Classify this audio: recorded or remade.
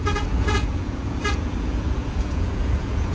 remade